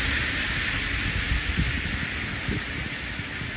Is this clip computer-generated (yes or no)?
no